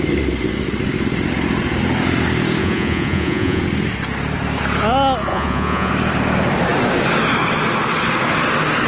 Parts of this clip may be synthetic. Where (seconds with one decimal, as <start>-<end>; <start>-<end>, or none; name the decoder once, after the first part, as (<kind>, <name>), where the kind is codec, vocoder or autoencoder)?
2.6-3.6 (vocoder, Vocos); 5.3-5.9